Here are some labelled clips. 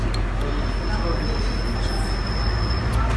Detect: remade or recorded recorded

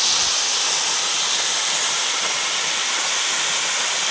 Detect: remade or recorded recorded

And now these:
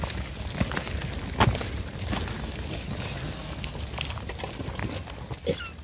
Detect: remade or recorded recorded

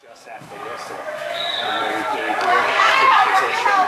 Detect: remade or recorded remade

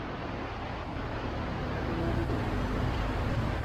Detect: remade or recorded recorded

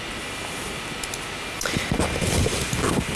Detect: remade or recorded recorded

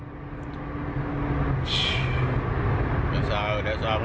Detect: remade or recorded recorded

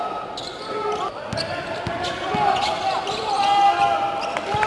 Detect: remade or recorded recorded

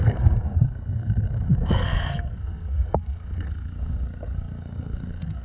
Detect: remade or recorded remade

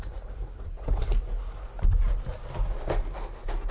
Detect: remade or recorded recorded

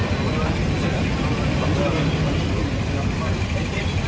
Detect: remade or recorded recorded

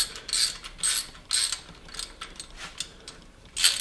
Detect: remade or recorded recorded